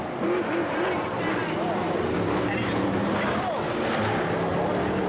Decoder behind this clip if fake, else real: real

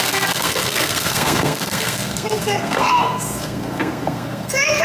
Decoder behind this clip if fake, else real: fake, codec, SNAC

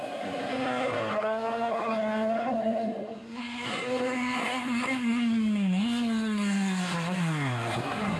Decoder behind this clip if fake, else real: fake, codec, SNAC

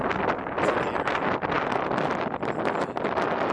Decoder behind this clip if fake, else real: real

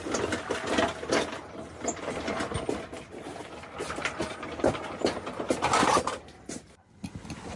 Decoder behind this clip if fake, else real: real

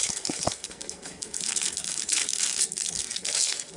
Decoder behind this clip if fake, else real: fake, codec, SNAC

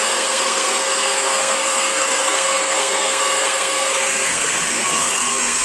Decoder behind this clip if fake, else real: fake, codec, SNAC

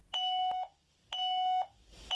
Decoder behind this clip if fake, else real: real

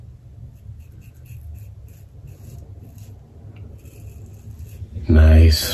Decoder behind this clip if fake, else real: real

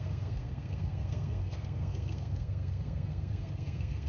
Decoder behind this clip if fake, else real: fake, codec, SNAC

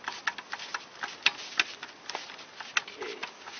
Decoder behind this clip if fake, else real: real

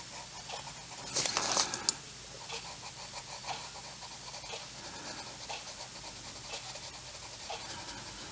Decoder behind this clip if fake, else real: real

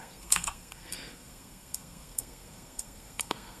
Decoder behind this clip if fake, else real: fake, codec, SNAC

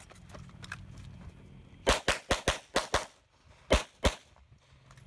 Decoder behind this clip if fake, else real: real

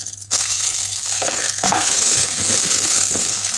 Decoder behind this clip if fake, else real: fake, codec, SNAC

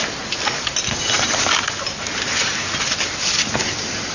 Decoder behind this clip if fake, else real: real